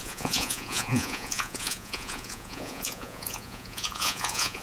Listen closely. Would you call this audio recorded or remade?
remade